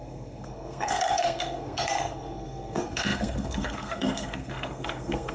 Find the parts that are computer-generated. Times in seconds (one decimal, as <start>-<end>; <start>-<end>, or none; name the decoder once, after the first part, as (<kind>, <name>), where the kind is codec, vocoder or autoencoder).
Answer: 0.0-5.3 (codec, SNAC)